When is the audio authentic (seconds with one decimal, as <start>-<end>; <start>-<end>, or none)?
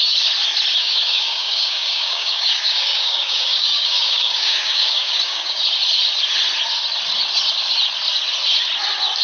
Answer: 0.0-0.8; 5.6-9.2